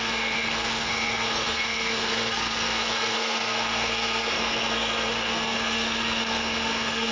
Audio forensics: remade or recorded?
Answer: remade